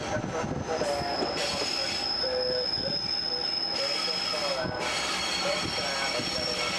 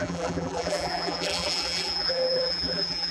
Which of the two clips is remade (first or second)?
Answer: second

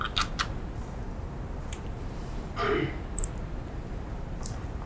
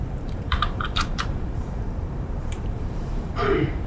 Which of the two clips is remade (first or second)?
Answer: second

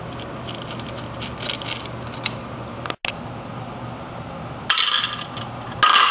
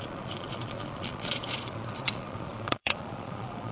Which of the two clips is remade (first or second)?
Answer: second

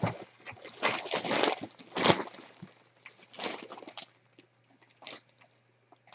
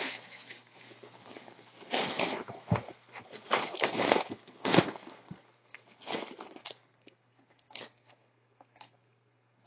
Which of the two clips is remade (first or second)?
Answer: second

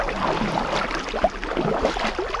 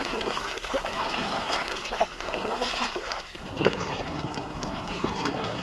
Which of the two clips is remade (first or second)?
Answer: second